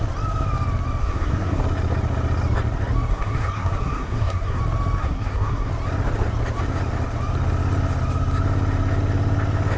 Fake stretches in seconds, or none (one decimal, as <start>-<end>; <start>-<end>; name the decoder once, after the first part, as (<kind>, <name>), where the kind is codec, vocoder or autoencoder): 1.0-1.6 (codec, SNAC); 3.1-4.6; 5.0-5.7